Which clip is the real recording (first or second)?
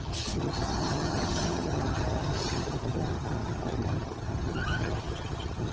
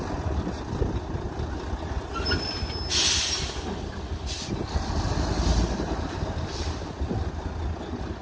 second